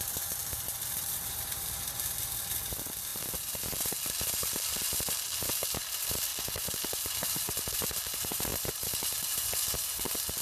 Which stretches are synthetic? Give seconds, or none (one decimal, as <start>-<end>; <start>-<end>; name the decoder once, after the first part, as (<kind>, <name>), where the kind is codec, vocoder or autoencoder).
0.0-6.3 (vocoder, BigVGAN v2); 7.1-10.4